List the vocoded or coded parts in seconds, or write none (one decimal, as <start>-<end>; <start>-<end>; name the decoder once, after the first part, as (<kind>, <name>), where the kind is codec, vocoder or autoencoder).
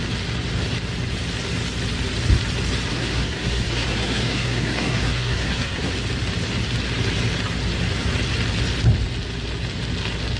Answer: 2.9-5.9 (codec, SNAC)